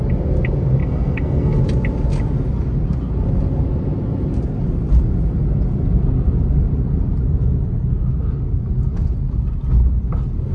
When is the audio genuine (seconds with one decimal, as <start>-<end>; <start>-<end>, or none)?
0.0-0.8; 1.6-10.5